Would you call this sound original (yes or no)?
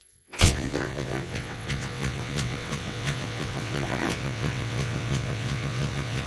no